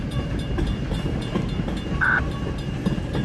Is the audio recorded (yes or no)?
no